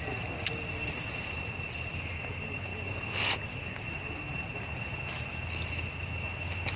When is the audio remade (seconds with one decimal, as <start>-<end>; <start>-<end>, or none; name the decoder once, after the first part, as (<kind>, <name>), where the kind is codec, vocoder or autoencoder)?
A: none